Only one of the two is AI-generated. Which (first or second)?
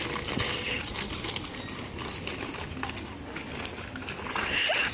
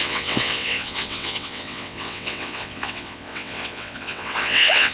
second